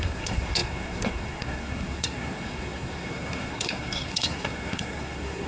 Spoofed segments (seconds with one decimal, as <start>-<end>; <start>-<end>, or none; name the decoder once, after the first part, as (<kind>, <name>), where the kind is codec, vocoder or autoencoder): 0.0-5.5 (codec, SNAC)